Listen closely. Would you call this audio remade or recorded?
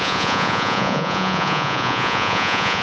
remade